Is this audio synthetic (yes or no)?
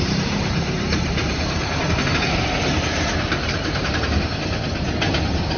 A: yes